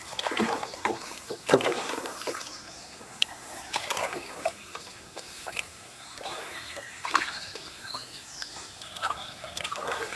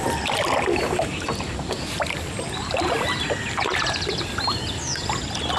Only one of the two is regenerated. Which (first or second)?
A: first